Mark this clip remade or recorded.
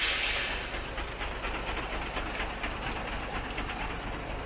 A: recorded